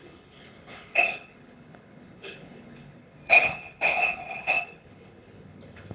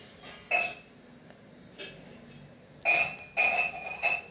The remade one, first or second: first